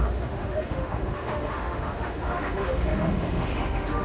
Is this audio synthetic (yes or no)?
yes